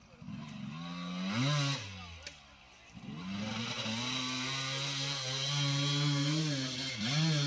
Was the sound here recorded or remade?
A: recorded